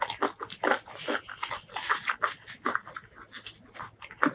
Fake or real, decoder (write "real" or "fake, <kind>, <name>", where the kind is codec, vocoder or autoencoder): real